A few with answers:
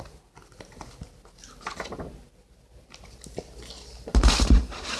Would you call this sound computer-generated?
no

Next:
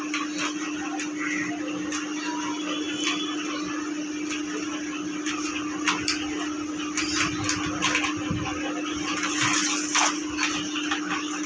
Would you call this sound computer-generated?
no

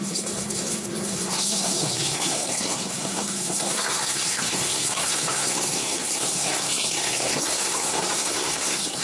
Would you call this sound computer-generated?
yes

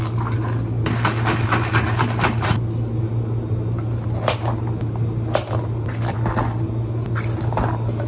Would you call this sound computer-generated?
no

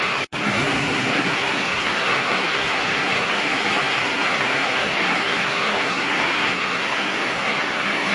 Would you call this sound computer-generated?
yes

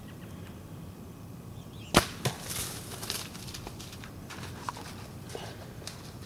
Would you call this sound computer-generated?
no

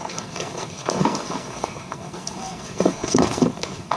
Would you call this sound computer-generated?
yes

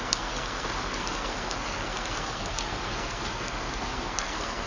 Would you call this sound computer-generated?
yes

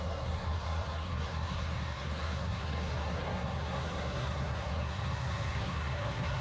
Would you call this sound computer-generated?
yes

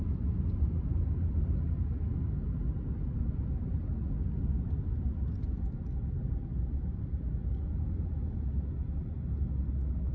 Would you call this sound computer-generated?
no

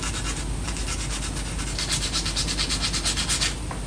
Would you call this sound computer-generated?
no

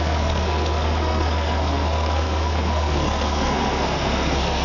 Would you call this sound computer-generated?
yes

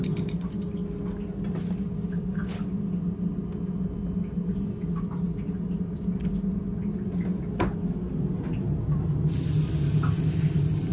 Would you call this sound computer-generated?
no